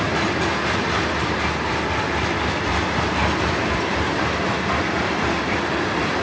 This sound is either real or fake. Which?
fake